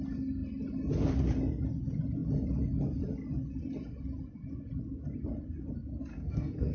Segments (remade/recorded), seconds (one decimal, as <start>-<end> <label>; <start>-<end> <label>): 0.0-6.1 recorded; 6.1-6.7 remade